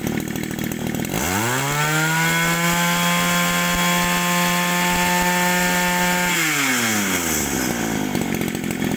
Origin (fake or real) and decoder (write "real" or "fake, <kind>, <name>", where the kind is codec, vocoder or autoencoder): real